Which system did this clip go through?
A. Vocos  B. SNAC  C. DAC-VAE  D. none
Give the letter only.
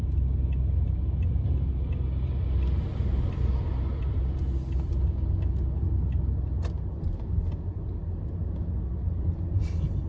D